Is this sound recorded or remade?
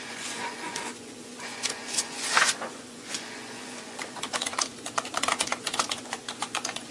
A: remade